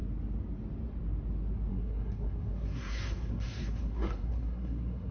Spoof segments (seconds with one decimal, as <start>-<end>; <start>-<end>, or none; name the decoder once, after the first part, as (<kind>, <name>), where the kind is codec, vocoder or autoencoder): 1.7-5.1 (codec, SNAC)